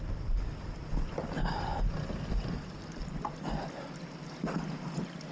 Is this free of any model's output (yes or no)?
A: yes